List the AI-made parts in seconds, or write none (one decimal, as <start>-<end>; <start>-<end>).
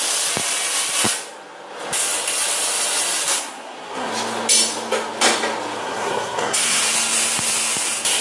3.3-4.1; 5.8-6.8